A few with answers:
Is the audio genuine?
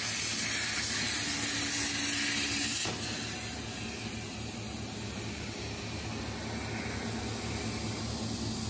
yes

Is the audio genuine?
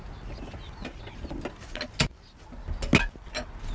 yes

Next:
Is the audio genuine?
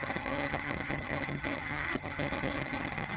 no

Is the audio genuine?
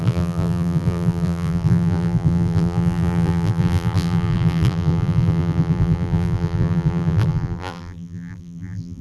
no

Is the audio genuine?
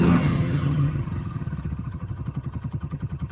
no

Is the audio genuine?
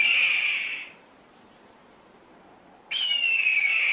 yes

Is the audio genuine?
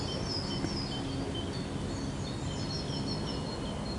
yes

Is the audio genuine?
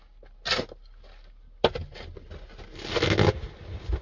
yes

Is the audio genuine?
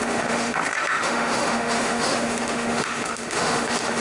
no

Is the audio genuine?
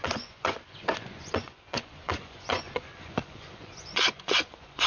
no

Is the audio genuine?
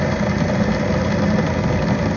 yes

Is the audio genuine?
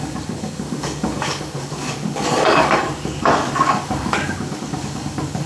no